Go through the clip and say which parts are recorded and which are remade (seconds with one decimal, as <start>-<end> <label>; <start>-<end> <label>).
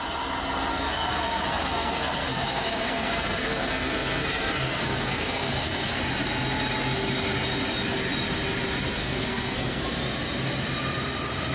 0.0-0.7 recorded; 0.7-6.0 remade; 6.0-9.0 recorded; 9.0-9.8 remade; 9.8-11.5 recorded